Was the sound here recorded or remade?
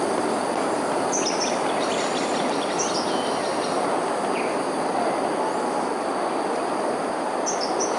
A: recorded